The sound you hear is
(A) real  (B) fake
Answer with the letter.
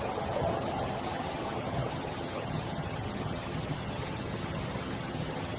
B